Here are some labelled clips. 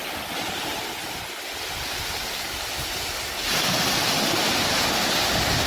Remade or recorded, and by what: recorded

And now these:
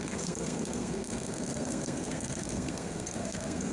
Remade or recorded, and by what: remade, codec, SNAC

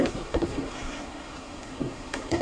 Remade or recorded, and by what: remade, codec, SNAC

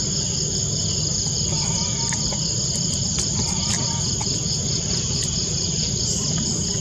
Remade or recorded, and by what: recorded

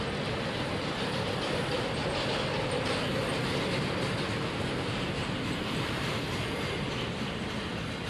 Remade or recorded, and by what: recorded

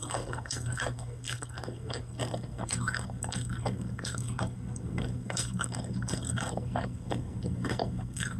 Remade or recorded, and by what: remade, codec, SNAC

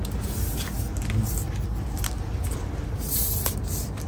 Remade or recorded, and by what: recorded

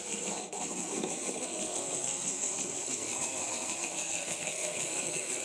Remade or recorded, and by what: remade, codec, SNAC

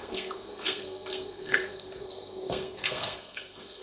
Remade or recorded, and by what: remade, codec, SNAC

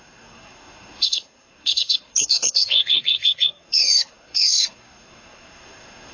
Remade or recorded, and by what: remade, codec, SNAC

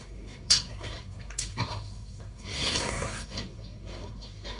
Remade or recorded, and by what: remade, codec, SNAC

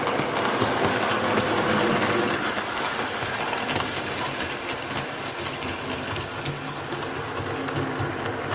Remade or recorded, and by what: recorded